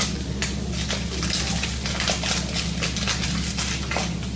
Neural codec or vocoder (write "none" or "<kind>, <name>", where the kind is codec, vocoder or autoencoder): none